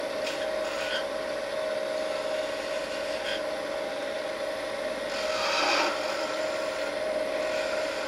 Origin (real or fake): real